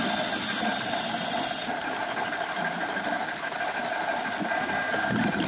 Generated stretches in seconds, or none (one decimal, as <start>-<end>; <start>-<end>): 0.0-3.3; 3.8-4.8